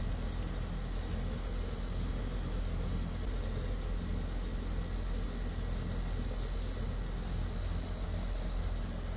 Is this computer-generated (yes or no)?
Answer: no